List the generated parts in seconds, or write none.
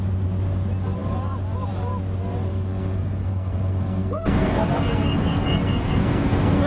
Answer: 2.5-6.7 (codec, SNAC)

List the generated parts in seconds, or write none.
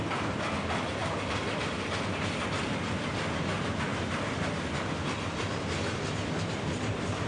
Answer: none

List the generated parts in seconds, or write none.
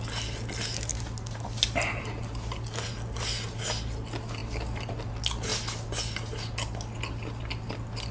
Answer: none